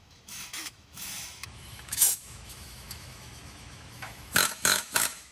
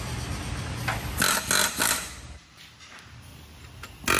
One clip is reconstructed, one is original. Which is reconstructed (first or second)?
first